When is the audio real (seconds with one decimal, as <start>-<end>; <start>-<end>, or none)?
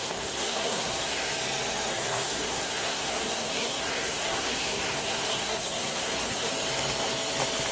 1.3-1.9; 6.5-7.7